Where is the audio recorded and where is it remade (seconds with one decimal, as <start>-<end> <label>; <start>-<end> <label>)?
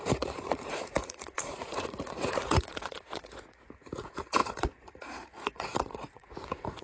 0.0-6.8 remade